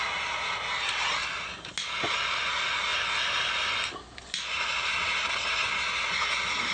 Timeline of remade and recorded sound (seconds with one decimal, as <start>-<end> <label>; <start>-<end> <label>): 0.0-6.7 recorded